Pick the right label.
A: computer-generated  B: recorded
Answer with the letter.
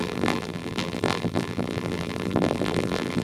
A